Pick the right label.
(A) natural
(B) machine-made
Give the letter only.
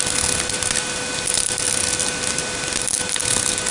A